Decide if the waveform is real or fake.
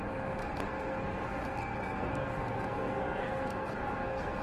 fake